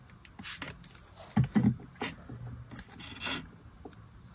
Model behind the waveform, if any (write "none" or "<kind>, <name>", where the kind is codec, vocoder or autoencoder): none